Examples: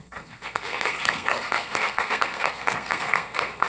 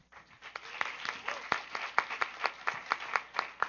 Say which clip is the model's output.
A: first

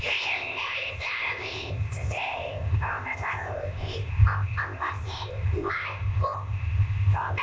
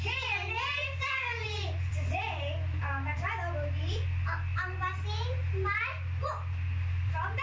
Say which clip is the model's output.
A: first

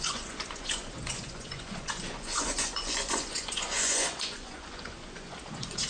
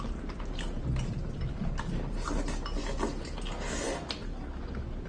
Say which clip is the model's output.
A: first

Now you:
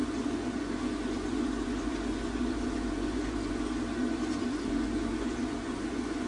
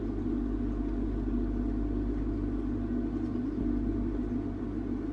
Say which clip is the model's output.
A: first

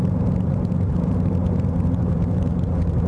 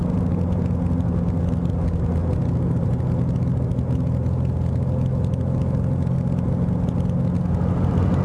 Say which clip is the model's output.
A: first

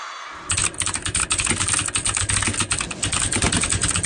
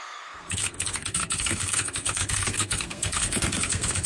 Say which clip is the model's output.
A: second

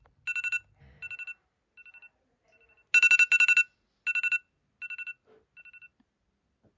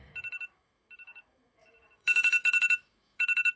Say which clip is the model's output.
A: second